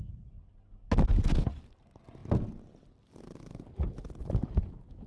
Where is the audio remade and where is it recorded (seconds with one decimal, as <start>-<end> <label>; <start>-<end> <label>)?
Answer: 0.0-5.1 recorded